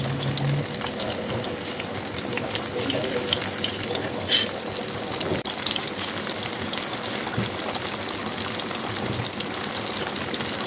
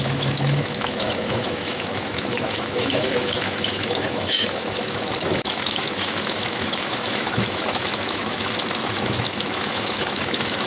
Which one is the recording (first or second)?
first